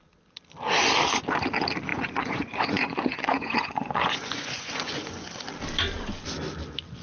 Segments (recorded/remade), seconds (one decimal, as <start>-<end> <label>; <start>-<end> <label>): 0.0-1.9 recorded; 1.9-5.3 remade; 5.3-7.0 recorded